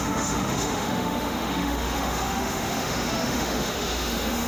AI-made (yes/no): yes